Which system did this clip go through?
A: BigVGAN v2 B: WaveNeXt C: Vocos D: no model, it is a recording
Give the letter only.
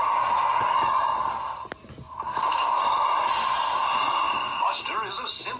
D